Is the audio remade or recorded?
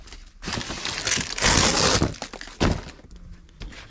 recorded